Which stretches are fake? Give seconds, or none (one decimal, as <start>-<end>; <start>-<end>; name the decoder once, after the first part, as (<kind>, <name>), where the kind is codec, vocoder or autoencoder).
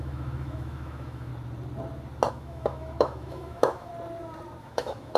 0.0-1.3 (autoencoder, DAC-VAE); 2.3-3.9; 4.6-5.2